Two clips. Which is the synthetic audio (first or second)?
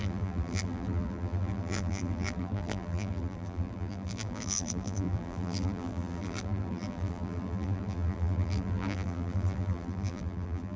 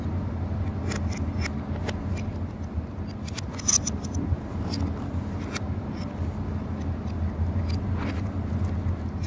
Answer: first